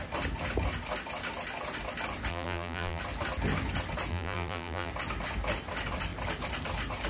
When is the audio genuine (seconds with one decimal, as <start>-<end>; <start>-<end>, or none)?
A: 0.0-2.3; 3.0-4.1; 4.9-7.1